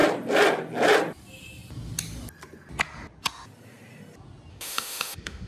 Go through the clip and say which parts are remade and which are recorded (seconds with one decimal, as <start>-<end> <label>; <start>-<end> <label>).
0.0-4.5 recorded; 4.5-5.5 remade